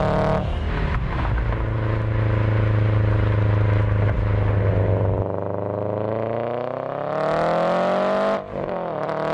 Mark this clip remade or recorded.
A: recorded